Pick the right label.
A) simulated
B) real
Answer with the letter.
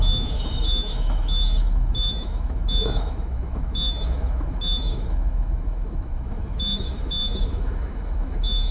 A